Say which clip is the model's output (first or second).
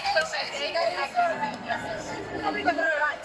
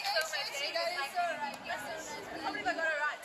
first